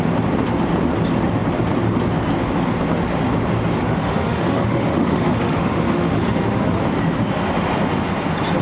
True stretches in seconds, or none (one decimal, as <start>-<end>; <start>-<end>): 0.0-3.8; 6.8-8.6